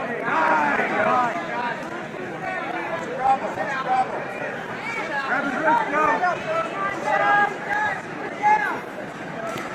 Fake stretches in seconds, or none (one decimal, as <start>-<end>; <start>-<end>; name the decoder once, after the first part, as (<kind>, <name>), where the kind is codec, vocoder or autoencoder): 0.0-1.2 (vocoder, BigVGAN v2); 2.6-9.7